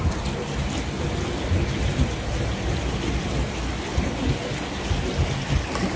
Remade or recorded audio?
recorded